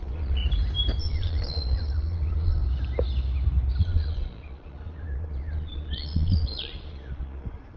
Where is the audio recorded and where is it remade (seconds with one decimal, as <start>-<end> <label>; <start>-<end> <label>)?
0.0-0.4 remade; 0.4-1.0 recorded; 1.0-2.6 remade; 2.6-3.8 recorded; 3.8-7.8 remade